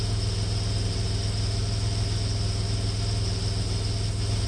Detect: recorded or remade recorded